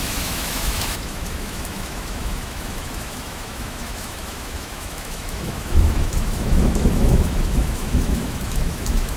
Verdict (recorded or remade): remade